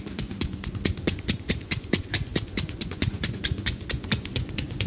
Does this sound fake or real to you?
fake